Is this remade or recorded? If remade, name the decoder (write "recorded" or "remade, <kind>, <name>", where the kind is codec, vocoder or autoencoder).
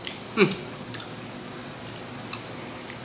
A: recorded